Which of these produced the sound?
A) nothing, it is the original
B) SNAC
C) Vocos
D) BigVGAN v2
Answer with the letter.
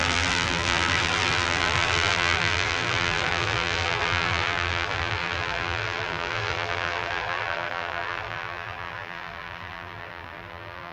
D